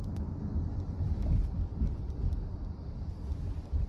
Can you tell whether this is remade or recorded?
recorded